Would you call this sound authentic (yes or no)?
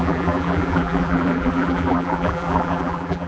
no